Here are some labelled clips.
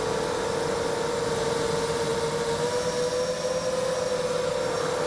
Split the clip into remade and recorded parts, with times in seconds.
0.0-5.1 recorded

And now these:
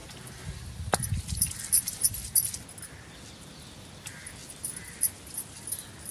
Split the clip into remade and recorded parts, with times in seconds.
0.0-6.1 recorded

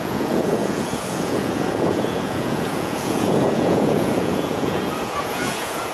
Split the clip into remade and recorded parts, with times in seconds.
0.0-5.9 remade

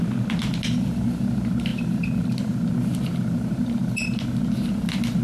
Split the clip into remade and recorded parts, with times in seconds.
0.0-5.2 recorded

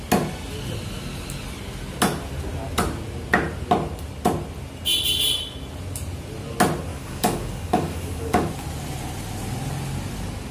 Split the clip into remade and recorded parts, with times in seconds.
0.0-6.9 recorded; 6.9-8.5 remade; 8.5-10.5 recorded

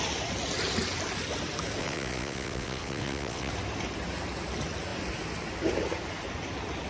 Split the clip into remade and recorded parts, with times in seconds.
0.0-1.8 recorded; 1.8-3.5 remade; 3.5-6.9 recorded

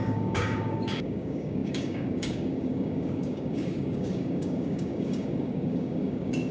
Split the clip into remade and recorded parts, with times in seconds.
0.0-6.5 remade